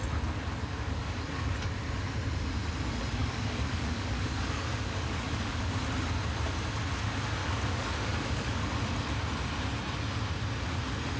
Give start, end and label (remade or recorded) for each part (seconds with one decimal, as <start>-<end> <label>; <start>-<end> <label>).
0.0-0.6 recorded; 0.6-1.2 remade; 1.2-3.2 recorded; 3.2-5.8 remade; 5.8-7.4 recorded; 7.4-8.8 remade; 8.8-11.2 recorded